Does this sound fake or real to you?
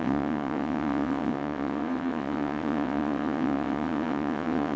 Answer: fake